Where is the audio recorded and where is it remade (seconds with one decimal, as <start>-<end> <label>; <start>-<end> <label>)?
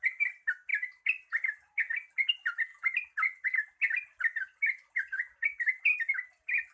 0.0-6.7 recorded